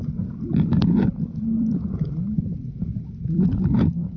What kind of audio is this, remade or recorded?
remade